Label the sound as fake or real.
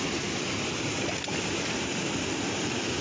real